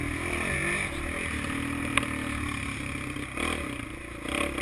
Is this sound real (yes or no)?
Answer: yes